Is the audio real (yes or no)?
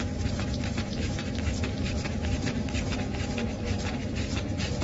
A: yes